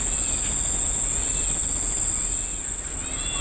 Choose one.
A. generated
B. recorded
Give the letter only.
B